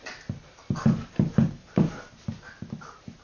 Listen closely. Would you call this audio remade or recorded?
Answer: recorded